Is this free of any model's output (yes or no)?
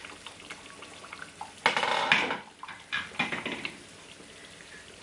yes